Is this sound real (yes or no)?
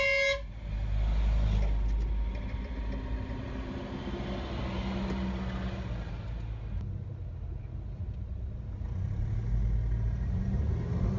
yes